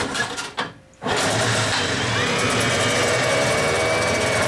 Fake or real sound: real